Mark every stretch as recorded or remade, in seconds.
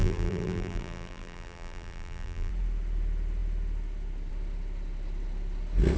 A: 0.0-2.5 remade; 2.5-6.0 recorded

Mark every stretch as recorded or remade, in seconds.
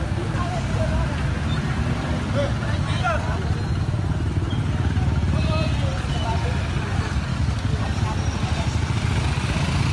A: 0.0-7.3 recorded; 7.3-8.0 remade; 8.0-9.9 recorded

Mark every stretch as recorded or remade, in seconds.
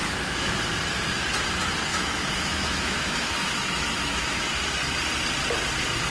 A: 0.0-0.6 remade; 0.6-1.9 recorded; 1.9-4.6 remade; 4.6-6.1 recorded